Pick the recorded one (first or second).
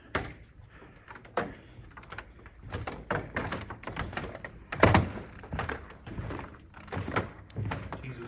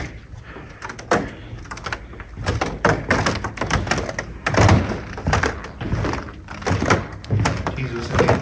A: second